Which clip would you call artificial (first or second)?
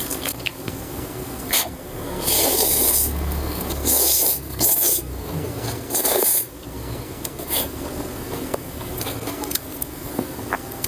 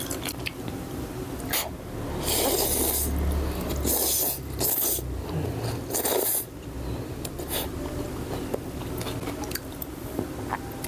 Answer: first